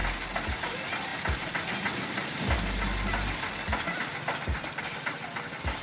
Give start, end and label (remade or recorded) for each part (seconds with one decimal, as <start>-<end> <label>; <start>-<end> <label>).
0.0-5.8 recorded